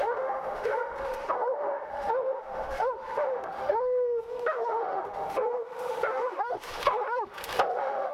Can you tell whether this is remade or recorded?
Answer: remade